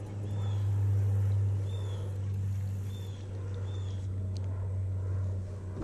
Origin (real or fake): real